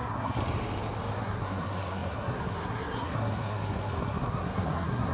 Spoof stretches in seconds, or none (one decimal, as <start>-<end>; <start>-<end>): 0.0-0.4; 1.2-5.1